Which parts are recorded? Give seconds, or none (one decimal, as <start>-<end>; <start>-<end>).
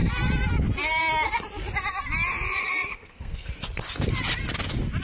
0.0-2.9; 3.5-5.0